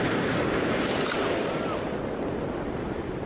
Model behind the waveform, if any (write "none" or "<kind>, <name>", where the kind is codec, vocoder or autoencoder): none